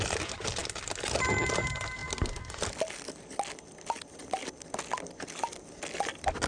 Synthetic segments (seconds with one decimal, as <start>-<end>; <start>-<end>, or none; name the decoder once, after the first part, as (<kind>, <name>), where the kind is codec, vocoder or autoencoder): none